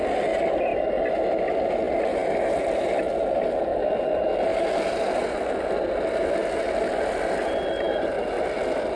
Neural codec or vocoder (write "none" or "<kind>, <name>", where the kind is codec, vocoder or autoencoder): none